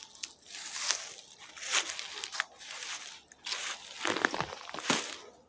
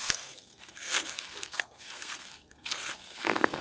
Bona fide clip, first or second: first